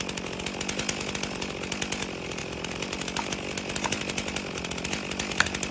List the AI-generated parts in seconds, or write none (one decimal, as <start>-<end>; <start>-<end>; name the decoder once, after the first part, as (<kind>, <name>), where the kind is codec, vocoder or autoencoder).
2.4-4.0 (vocoder, BigVGAN v2)